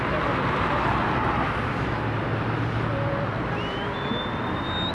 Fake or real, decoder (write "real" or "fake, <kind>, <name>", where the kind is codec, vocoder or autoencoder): real